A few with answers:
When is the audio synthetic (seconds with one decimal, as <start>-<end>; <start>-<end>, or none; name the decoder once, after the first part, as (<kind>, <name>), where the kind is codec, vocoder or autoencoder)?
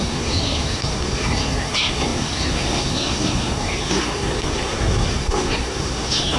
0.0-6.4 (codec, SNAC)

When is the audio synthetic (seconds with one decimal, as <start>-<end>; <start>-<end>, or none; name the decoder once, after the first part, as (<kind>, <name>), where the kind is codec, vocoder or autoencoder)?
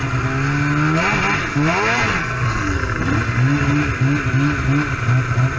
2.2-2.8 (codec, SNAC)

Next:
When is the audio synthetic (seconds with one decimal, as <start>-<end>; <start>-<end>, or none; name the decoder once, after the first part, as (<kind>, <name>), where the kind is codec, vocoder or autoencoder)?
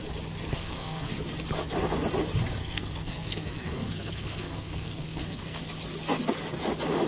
0.5-1.1 (codec, SNAC); 2.6-5.6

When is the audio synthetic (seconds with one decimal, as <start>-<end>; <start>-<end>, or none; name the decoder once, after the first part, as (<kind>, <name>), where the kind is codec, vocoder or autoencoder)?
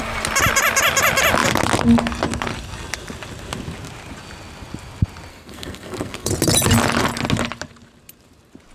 5.3-6.3 (codec, SNAC)